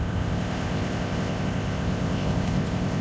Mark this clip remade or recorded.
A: remade